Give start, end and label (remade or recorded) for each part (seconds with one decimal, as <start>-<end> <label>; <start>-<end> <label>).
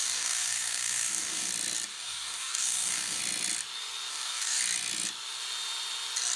0.0-1.5 remade; 1.5-1.9 recorded; 1.9-3.2 remade; 3.2-4.1 recorded; 4.1-4.6 remade; 4.6-6.4 recorded